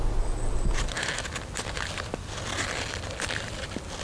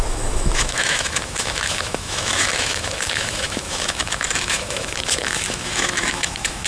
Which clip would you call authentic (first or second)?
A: first